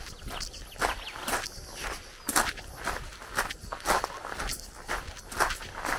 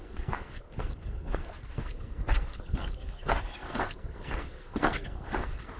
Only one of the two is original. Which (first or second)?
first